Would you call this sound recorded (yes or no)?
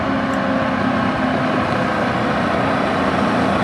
yes